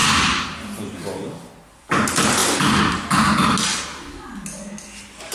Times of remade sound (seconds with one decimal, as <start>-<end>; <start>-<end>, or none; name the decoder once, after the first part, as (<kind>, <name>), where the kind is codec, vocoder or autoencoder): none